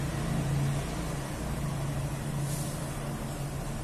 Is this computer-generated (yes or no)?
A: no